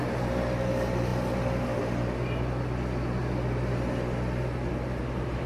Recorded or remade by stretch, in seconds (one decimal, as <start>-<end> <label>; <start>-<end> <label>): 0.0-5.5 recorded